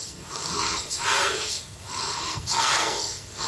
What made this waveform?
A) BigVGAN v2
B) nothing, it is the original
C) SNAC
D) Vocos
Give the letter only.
C